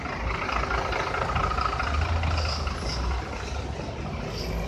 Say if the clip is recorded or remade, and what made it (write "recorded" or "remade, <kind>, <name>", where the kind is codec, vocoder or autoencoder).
recorded